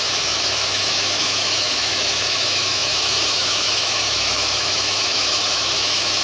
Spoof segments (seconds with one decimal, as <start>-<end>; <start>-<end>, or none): 0.0-6.2